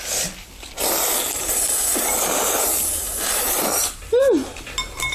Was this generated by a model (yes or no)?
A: no